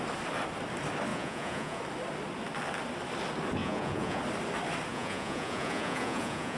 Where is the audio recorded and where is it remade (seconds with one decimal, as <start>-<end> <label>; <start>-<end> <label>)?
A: 0.0-1.1 recorded; 1.1-1.8 remade; 1.8-3.6 recorded; 3.6-4.2 remade; 4.2-4.9 recorded; 4.9-6.6 remade